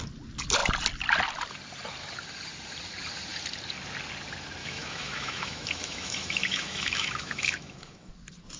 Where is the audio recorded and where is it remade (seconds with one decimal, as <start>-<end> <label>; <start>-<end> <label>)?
0.0-4.6 recorded; 4.6-8.1 remade; 8.1-8.6 recorded